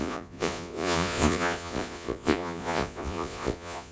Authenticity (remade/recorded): remade